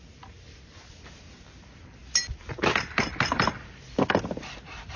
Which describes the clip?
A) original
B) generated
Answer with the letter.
A